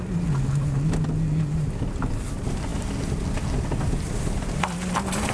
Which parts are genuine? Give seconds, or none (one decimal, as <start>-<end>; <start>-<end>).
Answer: 0.0-5.3